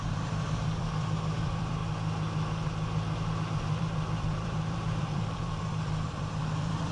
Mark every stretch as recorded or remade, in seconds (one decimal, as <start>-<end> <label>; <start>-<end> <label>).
0.0-1.8 remade; 1.8-3.8 recorded; 3.8-6.9 remade